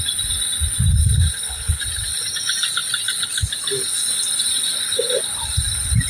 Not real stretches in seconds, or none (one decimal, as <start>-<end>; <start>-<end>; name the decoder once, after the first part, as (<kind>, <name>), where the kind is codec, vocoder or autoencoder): 1.0-1.8 (codec, HILCodec)